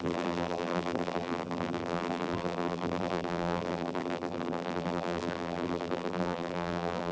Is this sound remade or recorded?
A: remade